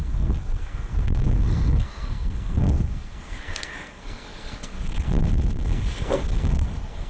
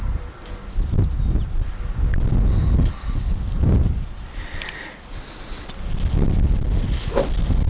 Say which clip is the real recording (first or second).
second